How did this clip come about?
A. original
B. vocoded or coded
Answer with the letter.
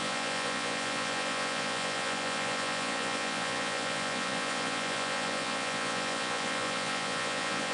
B